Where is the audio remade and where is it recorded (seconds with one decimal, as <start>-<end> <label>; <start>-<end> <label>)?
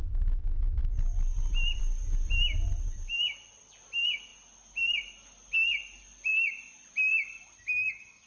0.0-8.3 recorded